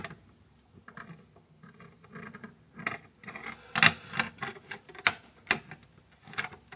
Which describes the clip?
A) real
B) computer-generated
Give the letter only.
A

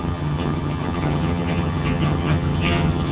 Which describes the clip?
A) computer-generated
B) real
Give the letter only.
A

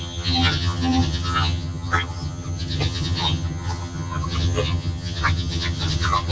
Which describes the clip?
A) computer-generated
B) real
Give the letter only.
A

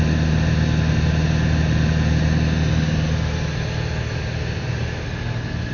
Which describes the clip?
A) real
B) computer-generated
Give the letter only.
A